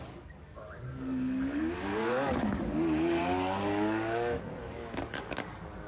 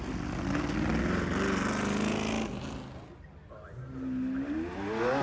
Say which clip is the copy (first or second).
first